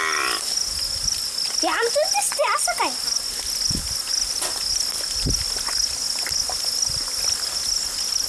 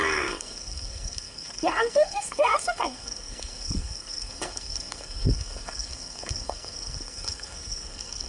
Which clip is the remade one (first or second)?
second